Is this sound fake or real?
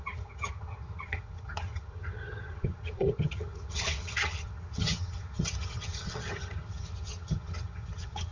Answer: fake